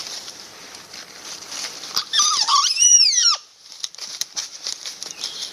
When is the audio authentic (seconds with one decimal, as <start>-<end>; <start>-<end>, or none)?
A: 3.3-4.4